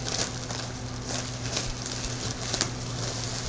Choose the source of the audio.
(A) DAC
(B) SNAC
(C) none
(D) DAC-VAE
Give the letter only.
C